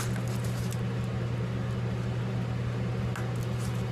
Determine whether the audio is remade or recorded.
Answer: recorded